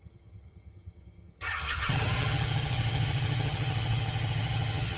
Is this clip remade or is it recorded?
remade